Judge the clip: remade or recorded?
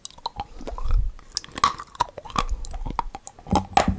recorded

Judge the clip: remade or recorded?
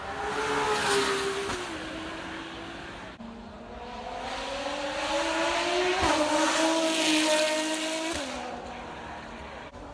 recorded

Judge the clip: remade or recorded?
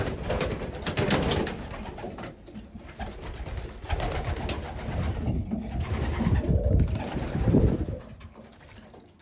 recorded